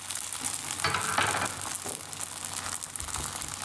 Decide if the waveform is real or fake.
real